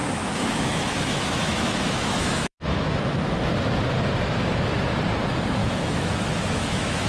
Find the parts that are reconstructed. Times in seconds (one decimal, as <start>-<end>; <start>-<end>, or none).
0.0-3.2; 5.6-7.1